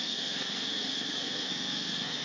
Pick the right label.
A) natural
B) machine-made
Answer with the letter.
B